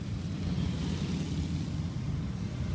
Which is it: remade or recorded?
recorded